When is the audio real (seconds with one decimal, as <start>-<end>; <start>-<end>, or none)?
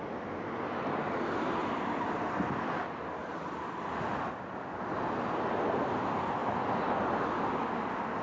0.0-1.6; 2.3-3.2; 4.5-6.4; 7.1-8.2